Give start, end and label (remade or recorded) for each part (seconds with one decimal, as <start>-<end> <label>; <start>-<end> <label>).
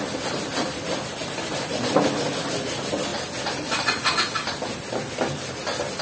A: 0.0-6.0 recorded